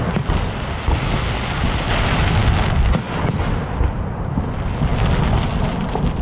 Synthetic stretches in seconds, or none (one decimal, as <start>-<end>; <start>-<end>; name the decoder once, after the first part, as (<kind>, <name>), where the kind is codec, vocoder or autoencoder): none